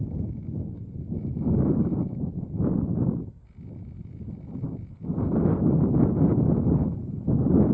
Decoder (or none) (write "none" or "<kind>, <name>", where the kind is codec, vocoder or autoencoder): none